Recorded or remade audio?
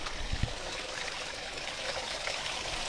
remade